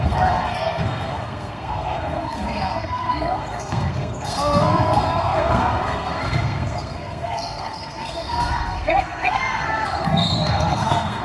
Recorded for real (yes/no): no